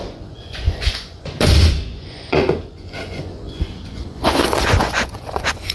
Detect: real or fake fake